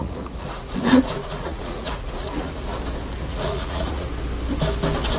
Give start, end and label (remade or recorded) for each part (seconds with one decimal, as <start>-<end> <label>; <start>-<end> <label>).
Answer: 0.0-2.7 remade; 2.7-3.3 recorded; 3.3-4.1 remade; 4.1-5.2 recorded